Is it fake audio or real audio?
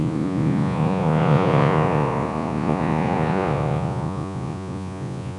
fake